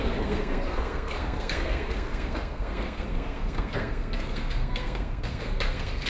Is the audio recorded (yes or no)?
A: no